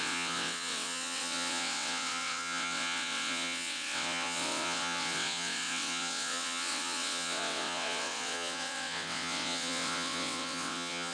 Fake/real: fake